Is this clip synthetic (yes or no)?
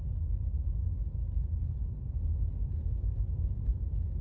no